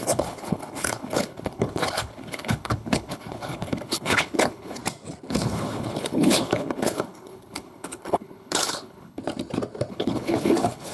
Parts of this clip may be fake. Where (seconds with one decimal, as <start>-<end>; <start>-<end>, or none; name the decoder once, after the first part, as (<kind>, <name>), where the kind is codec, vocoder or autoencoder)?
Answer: 0.0-4.8 (codec, HILCodec); 5.3-9.2; 9.9-10.9